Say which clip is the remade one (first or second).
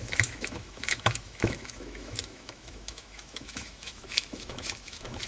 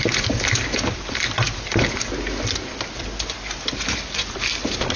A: first